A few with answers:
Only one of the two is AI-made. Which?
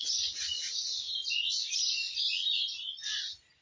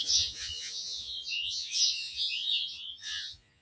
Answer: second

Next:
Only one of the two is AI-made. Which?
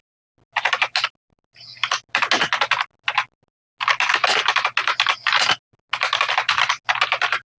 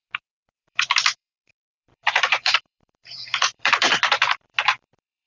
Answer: second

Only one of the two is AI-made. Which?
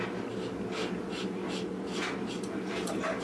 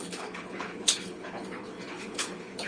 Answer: second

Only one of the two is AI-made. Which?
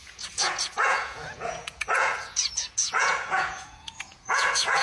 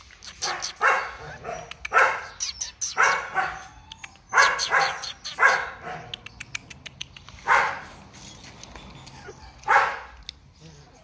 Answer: first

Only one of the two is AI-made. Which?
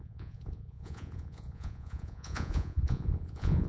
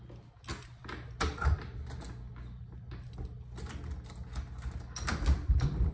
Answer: first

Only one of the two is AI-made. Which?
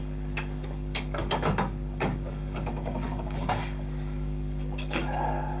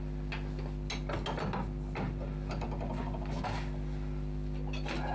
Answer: first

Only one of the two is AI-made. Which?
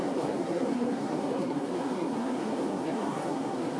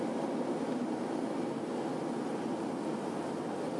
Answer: first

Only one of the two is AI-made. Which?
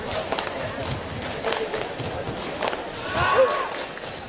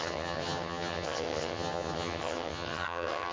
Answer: second